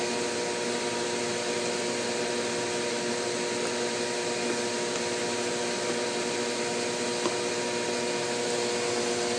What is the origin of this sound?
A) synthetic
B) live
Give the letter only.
B